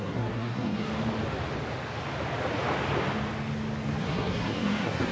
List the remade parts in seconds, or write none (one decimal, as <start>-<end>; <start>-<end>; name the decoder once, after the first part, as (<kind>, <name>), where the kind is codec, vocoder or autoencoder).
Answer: 0.0-0.9 (codec, SNAC); 4.0-5.1